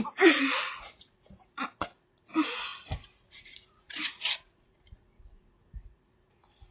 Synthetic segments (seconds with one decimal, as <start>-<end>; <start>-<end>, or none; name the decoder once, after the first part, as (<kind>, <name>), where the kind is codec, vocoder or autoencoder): 0.0-6.7 (vocoder, Vocos)